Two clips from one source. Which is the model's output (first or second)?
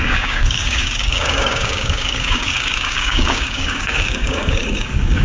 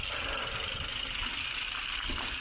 first